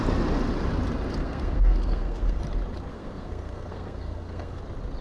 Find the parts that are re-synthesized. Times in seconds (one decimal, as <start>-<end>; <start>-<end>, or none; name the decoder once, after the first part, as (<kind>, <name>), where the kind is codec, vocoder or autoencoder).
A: 1.2-2.4 (codec, SNAC); 2.9-4.6